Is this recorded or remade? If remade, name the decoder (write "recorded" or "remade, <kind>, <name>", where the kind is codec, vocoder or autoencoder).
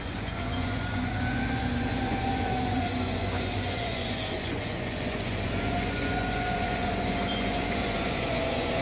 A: remade, vocoder, Vocos